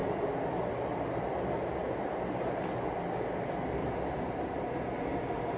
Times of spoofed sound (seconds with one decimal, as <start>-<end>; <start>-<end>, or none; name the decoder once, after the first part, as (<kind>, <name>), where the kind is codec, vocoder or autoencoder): 1.8-2.7 (vocoder, BigVGAN v2); 3.8-4.7

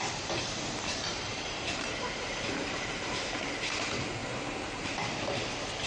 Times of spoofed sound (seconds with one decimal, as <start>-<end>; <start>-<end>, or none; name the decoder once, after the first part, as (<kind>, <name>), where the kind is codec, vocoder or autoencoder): 1.1-3.4 (vocoder, BigVGAN v2); 4.2-5.5

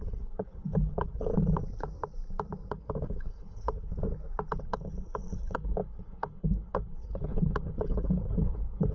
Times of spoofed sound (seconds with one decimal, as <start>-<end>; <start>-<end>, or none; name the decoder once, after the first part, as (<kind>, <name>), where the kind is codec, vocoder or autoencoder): 0.0-1.3 (codec, HILCodec); 2.7-3.9; 4.5-8.9

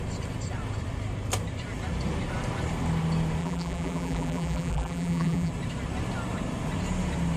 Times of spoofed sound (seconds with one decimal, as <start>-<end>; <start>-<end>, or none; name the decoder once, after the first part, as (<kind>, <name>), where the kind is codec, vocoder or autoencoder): 3.4-5.5 (vocoder, BigVGAN v2)

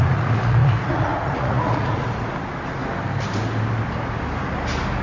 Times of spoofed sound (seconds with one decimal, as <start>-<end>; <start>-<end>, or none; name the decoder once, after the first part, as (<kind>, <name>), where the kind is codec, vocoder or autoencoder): 0.0-2.0 (vocoder, Vocos)

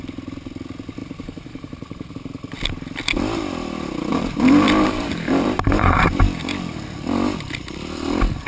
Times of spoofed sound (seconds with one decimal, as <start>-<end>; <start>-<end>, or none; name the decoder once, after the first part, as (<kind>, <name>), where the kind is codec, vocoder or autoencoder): 1.0-2.1 (vocoder, BigVGAN v2); 4.1-6.2

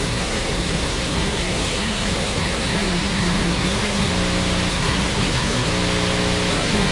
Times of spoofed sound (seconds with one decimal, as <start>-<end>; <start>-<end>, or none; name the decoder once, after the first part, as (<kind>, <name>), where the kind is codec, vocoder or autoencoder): 0.0-4.1 (codec, SNAC); 4.7-5.7; 6.5-6.9

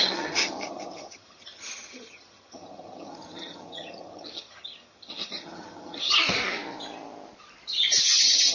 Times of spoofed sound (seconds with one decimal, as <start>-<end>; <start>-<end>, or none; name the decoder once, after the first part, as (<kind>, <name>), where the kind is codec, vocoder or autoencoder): 0.0-6.2 (vocoder, HiFi-GAN); 8.0-8.5